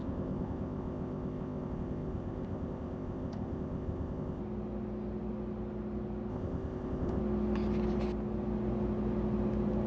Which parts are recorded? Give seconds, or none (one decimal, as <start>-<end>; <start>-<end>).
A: 4.4-6.3; 7.2-9.9